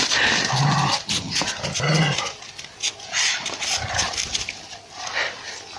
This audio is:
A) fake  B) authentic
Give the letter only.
B